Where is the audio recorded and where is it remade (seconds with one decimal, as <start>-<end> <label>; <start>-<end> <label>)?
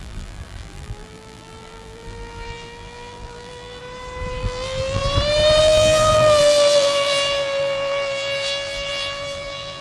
0.0-3.8 remade; 3.8-4.4 recorded; 4.4-5.0 remade; 5.0-5.6 recorded; 5.6-9.8 remade